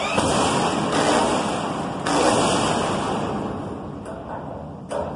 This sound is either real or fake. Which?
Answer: real